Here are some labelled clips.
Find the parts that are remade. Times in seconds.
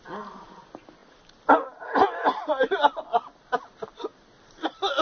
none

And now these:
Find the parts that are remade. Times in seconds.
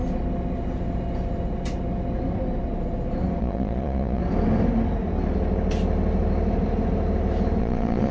3.4-4.2 (vocoder, Vocos); 7.6-8.1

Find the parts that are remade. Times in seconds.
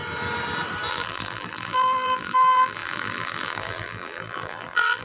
0.9-5.0 (vocoder, BigVGAN v2)